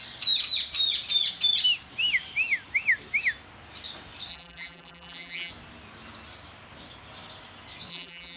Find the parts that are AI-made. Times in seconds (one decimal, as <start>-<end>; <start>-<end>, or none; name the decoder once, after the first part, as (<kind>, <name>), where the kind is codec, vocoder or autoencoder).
4.3-5.5 (vocoder, BigVGAN v2); 7.9-8.4